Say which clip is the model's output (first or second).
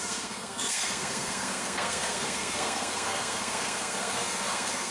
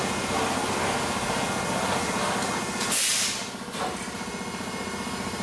first